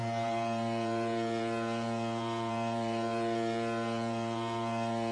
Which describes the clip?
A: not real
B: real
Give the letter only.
A